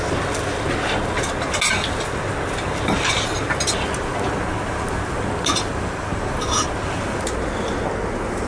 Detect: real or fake real